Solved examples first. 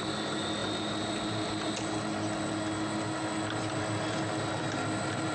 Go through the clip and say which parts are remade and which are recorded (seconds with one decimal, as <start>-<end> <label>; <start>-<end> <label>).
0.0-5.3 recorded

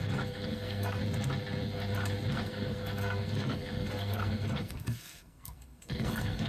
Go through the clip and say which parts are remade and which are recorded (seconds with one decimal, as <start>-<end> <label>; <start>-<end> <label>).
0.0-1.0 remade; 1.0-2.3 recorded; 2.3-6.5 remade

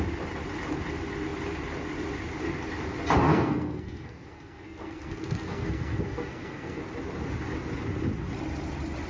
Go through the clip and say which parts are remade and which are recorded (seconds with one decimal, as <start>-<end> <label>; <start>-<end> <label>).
0.0-3.3 recorded; 3.3-6.8 remade; 6.8-9.1 recorded

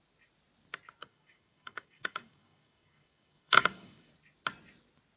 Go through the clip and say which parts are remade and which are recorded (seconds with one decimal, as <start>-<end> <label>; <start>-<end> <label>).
0.0-1.0 recorded; 1.0-4.1 remade; 4.1-5.2 recorded

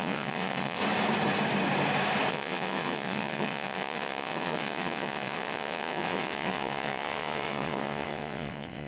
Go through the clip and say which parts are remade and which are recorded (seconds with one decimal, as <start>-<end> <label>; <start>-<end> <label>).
0.0-0.8 remade; 0.8-2.3 recorded; 2.3-8.9 remade

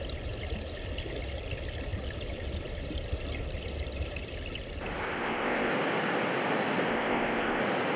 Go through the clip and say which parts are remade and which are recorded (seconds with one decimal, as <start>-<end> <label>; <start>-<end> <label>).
0.0-5.0 recorded; 5.0-5.7 remade; 5.7-6.9 recorded; 6.9-7.6 remade; 7.6-8.0 recorded

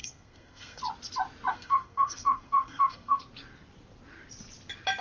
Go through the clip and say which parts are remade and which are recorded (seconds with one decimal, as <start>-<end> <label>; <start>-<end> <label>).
0.0-0.8 remade; 0.8-1.5 recorded; 1.5-3.2 remade; 3.2-5.0 recorded

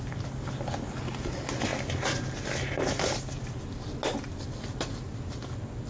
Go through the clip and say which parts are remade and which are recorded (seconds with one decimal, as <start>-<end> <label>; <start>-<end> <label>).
0.0-5.9 recorded